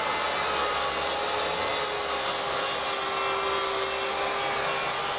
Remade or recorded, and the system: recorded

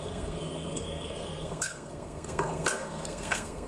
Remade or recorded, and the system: remade, codec, SNAC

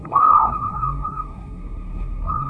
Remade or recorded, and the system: remade, codec, SNAC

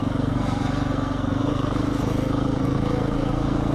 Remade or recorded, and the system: remade, codec, SNAC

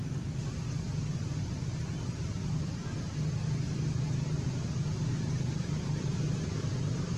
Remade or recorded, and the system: recorded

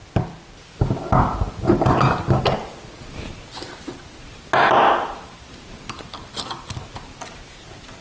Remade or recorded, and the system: recorded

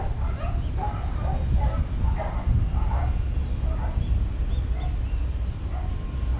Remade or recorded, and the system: recorded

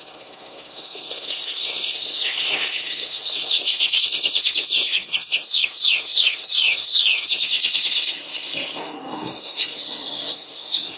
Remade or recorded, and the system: remade, codec, SNAC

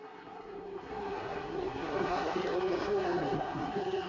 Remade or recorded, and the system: remade, codec, SNAC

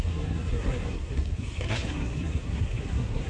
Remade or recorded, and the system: remade, codec, SNAC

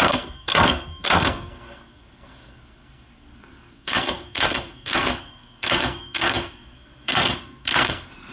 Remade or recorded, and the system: remade, codec, SNAC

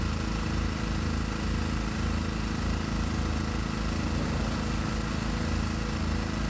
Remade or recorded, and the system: recorded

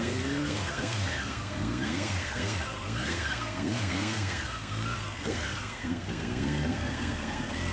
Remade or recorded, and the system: remade, codec, SNAC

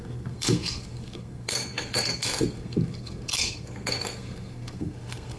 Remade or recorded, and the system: remade, codec, SNAC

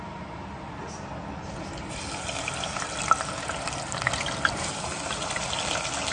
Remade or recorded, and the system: recorded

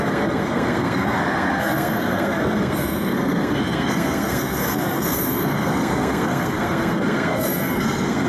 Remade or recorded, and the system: remade, codec, SNAC